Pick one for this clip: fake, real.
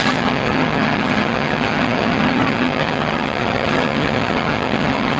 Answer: fake